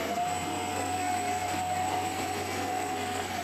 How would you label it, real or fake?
fake